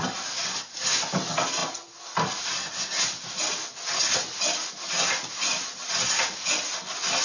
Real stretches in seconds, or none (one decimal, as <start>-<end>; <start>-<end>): 0.0-7.2